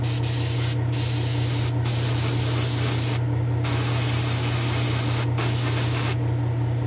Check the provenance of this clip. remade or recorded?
recorded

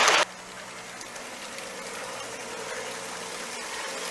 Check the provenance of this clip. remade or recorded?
recorded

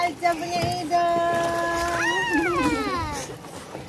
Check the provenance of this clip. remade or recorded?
recorded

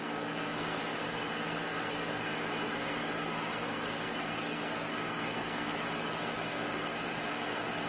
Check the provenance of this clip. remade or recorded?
remade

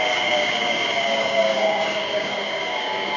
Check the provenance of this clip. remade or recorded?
remade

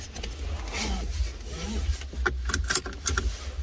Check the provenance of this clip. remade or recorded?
recorded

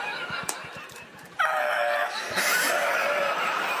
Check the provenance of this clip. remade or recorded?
remade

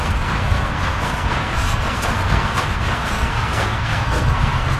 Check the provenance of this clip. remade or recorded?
remade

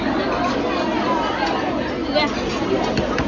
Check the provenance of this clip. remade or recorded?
recorded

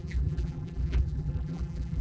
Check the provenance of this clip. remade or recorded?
remade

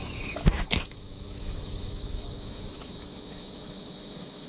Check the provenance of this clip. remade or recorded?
remade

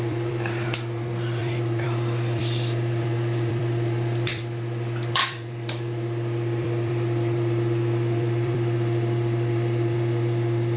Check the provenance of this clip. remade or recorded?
remade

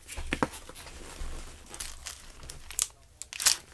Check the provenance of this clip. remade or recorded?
recorded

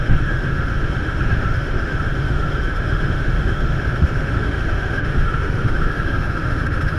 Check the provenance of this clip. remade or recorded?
remade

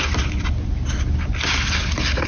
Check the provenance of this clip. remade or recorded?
recorded